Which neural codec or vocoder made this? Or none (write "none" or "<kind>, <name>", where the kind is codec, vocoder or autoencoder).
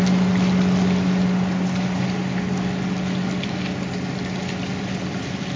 none